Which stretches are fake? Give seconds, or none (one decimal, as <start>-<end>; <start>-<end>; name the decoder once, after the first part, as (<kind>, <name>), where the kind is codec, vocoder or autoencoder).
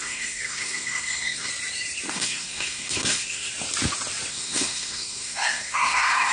0.0-1.5 (codec, SNAC); 2.1-3.5; 4.3-6.3